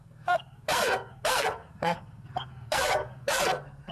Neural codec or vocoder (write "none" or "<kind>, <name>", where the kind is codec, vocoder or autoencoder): codec, SNAC